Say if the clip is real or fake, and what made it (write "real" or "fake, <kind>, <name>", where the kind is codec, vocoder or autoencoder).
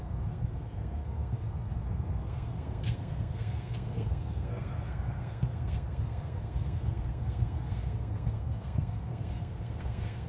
fake, codec, SNAC